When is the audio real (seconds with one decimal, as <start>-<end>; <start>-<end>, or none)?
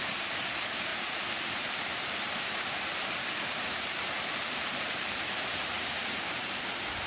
6.4-7.1